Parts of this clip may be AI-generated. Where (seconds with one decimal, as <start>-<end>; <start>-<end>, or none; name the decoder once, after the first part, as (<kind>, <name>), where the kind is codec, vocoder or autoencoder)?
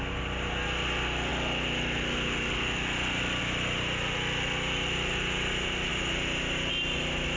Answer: none